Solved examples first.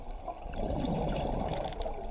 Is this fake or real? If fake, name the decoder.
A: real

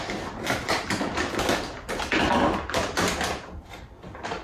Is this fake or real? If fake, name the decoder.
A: real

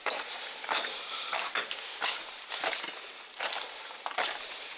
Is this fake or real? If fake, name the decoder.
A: fake, vocoder, BigVGAN v2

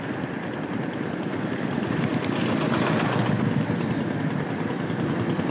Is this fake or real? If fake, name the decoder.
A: real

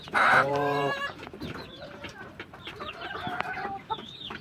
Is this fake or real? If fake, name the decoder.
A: fake, vocoder, BigVGAN v2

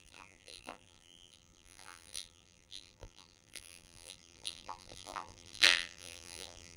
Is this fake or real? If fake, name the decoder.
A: fake, vocoder, BigVGAN v2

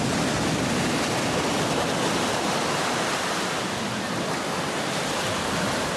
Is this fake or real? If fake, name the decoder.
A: real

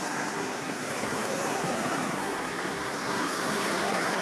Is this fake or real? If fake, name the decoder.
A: fake, codec, SNAC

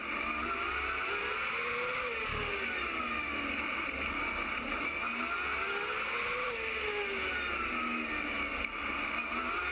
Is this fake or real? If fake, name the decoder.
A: real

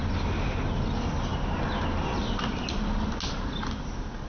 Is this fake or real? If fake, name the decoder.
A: real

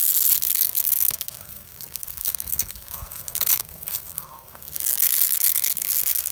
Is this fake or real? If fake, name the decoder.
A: fake, codec, SNAC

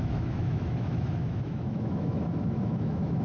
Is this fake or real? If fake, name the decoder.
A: fake, autoencoder, DAC-VAE